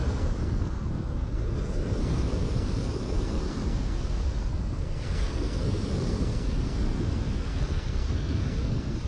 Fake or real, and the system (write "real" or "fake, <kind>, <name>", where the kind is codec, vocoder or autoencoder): fake, codec, SNAC